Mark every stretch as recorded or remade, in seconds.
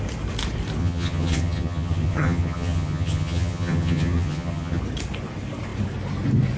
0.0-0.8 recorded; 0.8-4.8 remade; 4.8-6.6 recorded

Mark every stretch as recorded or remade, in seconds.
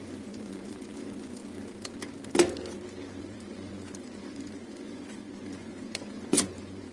0.0-1.4 remade; 1.4-3.2 recorded; 3.2-6.9 remade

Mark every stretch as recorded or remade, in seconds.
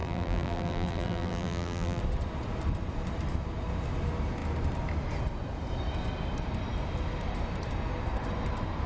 0.0-2.0 remade; 2.0-8.9 recorded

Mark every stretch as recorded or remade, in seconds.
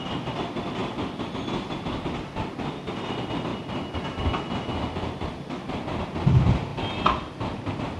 0.0-8.0 recorded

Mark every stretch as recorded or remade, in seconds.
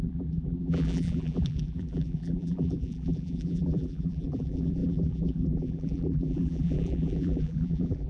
0.0-8.1 remade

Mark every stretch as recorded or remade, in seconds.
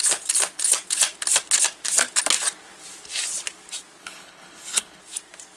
0.0-4.0 recorded; 4.0-5.0 remade; 5.0-5.6 recorded